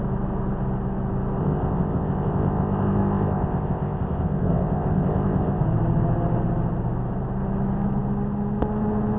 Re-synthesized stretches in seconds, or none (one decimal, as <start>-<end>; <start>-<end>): 1.4-5.6